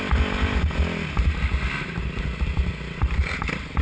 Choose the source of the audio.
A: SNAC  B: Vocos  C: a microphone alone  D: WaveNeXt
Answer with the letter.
C